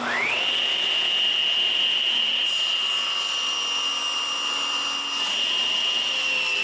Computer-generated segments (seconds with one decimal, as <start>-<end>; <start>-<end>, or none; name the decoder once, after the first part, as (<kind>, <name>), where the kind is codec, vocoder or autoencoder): none